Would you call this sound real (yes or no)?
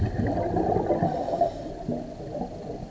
yes